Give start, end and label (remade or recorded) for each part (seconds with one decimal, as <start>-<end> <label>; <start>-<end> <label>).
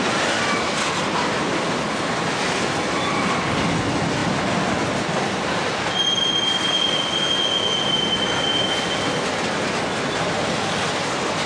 0.0-11.5 recorded